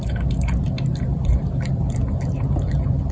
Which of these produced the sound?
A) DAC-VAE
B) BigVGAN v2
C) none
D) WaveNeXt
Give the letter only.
B